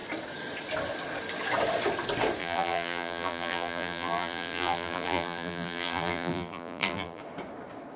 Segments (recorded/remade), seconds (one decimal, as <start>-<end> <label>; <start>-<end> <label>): 0.0-2.4 recorded; 2.4-7.2 remade; 7.2-8.0 recorded